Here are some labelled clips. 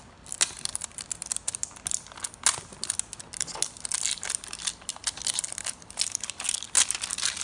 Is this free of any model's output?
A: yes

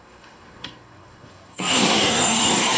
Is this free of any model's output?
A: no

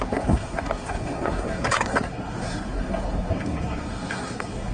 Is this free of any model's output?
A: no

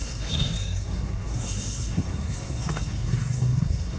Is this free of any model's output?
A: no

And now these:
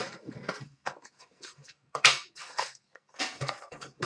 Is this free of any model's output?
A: no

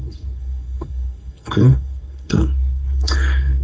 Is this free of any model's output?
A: no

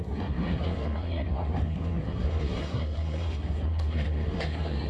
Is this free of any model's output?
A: no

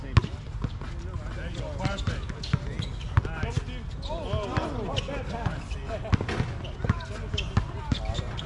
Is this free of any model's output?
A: yes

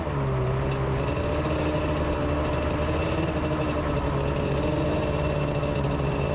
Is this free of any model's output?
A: yes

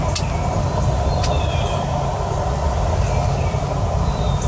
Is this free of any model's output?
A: yes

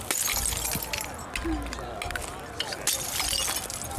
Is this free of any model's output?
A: yes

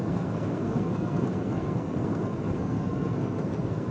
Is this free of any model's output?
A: no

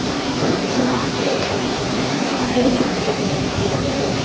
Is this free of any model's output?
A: no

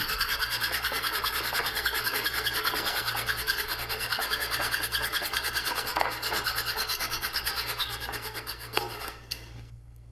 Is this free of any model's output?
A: no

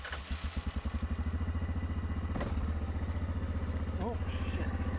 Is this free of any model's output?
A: yes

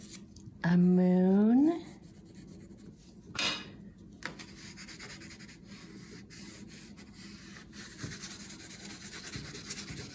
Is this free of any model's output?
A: yes